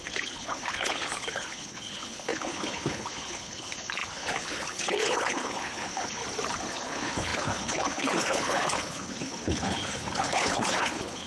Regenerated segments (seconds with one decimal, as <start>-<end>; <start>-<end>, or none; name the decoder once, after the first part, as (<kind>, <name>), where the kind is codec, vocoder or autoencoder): 0.0-6.2 (codec, HILCodec); 6.7-11.3